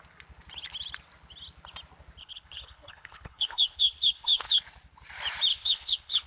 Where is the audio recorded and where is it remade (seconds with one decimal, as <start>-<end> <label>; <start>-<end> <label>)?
0.0-2.2 recorded; 2.2-4.6 remade; 4.6-5.5 recorded; 5.5-6.3 remade